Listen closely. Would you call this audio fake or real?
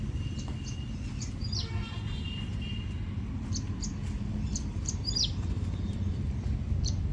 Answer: real